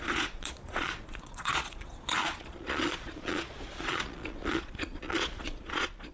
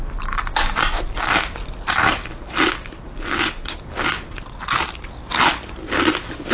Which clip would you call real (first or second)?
second